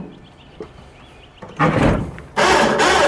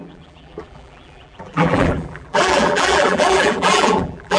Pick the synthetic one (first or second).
second